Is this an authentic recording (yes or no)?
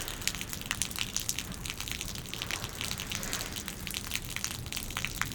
yes